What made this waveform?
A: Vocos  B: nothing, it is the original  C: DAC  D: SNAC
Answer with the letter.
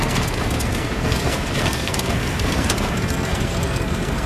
D